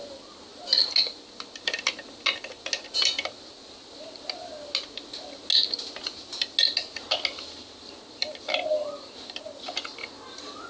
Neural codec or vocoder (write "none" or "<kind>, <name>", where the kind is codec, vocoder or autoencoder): none